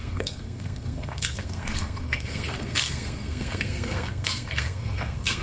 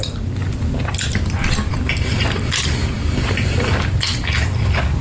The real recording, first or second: second